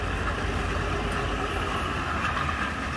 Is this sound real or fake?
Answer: real